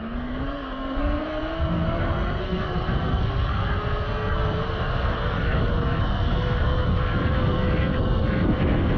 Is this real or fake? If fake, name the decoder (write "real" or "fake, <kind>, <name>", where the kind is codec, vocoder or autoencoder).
fake, codec, SNAC